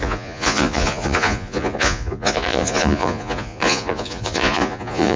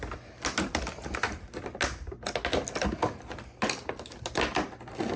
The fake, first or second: first